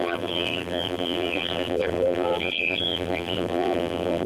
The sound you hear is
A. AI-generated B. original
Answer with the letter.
A